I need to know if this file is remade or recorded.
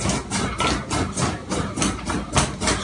recorded